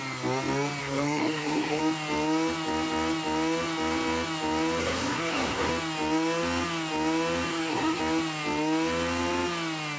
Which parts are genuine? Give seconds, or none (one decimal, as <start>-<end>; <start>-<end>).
0.0-0.8; 1.8-4.8; 5.7-7.5; 8.0-10.0